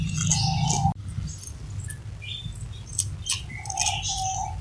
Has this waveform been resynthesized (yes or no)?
no